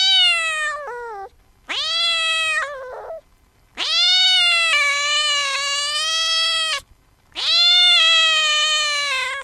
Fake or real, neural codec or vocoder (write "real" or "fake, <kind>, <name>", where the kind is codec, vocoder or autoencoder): real